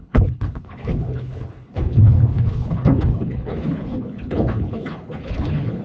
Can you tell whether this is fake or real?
fake